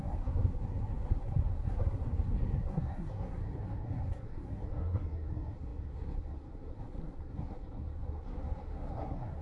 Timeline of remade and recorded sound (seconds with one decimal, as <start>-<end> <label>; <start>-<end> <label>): 0.0-9.4 remade